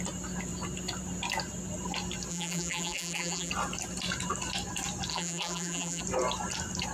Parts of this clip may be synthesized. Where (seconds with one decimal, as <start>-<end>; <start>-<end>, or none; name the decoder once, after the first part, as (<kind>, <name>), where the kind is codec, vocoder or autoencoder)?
2.3-3.5 (vocoder, BigVGAN v2); 5.1-6.0